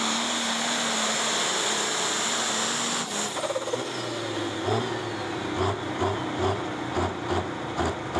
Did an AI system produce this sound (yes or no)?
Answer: no